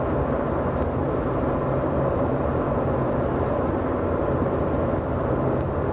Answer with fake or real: real